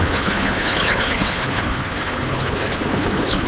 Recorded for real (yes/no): no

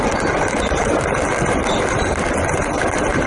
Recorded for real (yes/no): yes